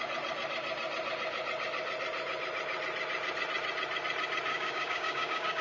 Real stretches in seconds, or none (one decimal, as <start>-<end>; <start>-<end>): 0.0-4.5